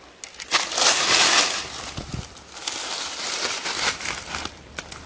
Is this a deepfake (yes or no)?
no